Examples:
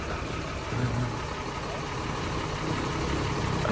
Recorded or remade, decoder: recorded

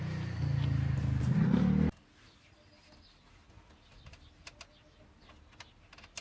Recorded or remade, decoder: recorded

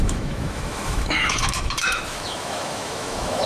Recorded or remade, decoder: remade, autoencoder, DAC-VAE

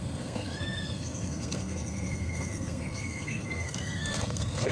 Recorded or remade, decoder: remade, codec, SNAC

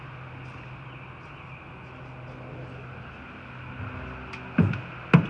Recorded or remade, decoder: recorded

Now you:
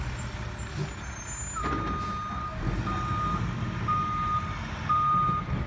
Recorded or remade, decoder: recorded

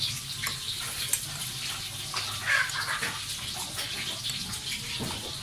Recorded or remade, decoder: recorded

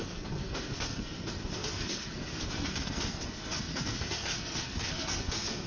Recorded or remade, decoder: remade, codec, SNAC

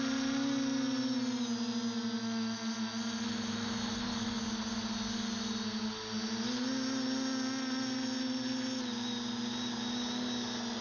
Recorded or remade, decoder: recorded